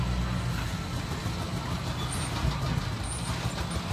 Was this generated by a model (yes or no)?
no